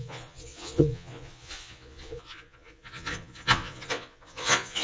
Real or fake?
fake